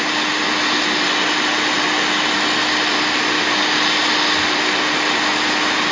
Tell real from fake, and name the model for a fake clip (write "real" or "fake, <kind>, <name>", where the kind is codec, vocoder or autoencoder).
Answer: real